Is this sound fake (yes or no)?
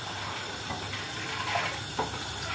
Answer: no